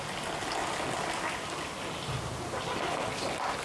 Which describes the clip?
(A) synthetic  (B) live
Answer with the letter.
B